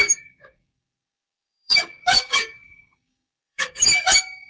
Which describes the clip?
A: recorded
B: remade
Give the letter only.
B